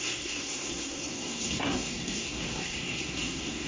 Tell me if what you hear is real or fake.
fake